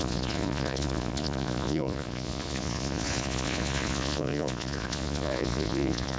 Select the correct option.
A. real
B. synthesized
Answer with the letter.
B